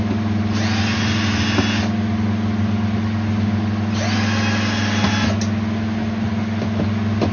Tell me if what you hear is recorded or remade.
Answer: recorded